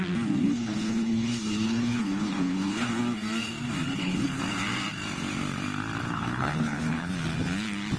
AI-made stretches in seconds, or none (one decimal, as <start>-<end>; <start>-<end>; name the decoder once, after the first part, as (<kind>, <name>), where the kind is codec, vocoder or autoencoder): 0.4-2.9 (codec, HILCodec); 3.9-4.4; 6.0-7.1